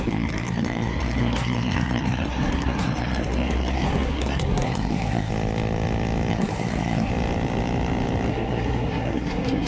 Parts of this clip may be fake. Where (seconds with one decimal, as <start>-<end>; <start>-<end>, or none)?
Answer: 0.0-5.3; 6.3-7.1; 8.3-9.7